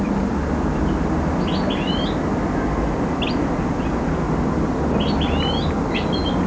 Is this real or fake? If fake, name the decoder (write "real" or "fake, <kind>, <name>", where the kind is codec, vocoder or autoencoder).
real